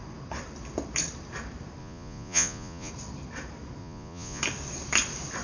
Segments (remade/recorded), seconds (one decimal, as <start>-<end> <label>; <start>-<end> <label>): 0.0-1.8 recorded; 1.8-2.9 remade; 2.9-3.8 recorded; 3.8-4.4 remade; 4.4-5.4 recorded